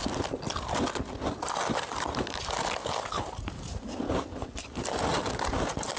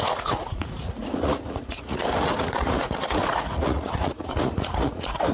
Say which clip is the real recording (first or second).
first